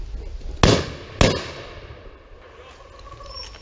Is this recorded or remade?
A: recorded